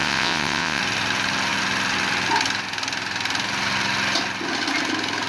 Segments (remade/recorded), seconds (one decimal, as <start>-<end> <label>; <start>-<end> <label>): 0.0-0.8 remade; 0.8-5.3 recorded